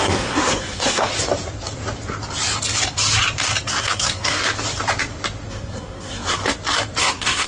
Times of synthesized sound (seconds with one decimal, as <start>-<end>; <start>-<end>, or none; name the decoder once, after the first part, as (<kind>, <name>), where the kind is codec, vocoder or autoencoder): 0.0-1.1 (codec, SNAC); 3.8-4.4; 5.5-6.4; 7.0-7.5